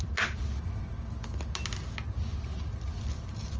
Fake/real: real